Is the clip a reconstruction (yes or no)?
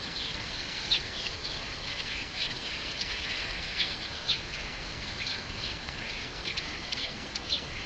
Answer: yes